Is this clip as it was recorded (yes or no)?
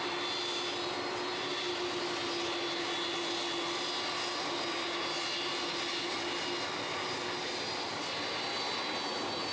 yes